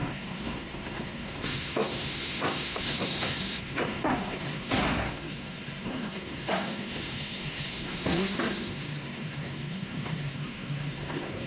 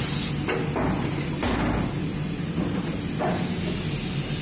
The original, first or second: second